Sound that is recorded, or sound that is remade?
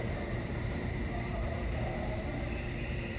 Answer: remade